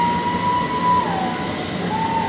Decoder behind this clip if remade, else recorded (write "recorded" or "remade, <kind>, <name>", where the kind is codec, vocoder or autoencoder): recorded